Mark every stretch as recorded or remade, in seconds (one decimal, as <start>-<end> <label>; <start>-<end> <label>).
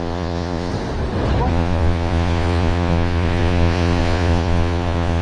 0.0-0.7 remade; 0.7-1.5 recorded; 1.5-5.2 remade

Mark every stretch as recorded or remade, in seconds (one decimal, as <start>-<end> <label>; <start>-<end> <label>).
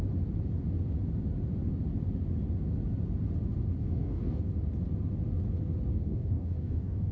0.0-3.8 recorded; 3.8-4.4 remade; 4.4-5.9 recorded; 5.9-7.1 remade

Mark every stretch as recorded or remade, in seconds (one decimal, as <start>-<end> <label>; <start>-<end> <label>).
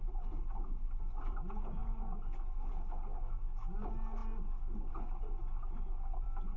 0.0-6.6 recorded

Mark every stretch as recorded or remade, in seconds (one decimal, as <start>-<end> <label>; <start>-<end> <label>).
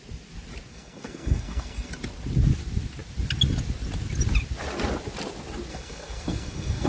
0.0-0.7 recorded; 0.7-1.9 remade; 1.9-5.7 recorded; 5.7-6.9 remade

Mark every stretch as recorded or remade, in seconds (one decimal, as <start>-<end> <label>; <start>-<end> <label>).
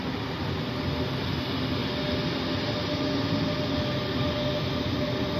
0.0-5.4 recorded